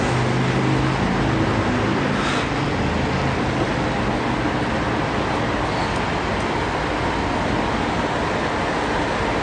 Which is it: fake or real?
real